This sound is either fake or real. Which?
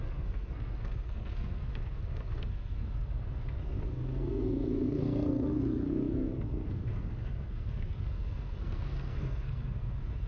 fake